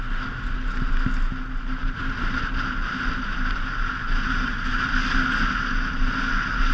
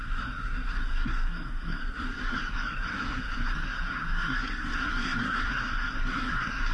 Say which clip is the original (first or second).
first